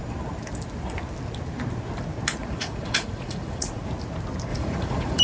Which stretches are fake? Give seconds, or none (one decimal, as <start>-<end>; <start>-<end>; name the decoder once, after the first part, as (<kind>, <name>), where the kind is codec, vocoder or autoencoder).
2.4-3.8 (vocoder, Vocos); 4.5-5.2